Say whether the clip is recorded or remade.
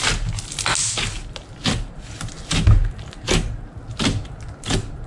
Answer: recorded